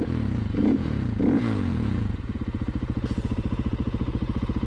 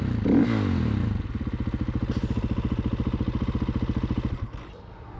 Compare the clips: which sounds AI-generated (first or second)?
first